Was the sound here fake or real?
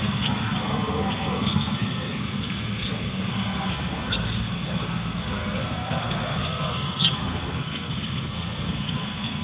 fake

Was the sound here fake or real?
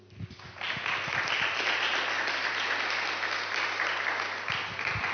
real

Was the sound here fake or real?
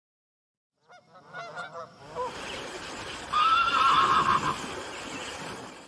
real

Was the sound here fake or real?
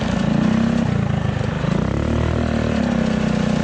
real